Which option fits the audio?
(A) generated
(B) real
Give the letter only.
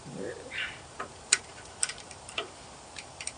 A